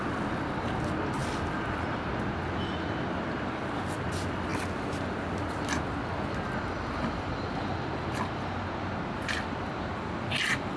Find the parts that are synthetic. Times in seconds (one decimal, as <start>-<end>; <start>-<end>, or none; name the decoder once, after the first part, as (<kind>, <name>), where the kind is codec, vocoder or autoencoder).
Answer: 1.2-2.1 (vocoder, BigVGAN v2)